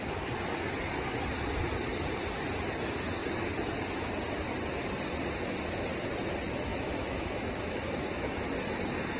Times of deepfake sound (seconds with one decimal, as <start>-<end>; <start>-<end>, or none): 6.7-8.6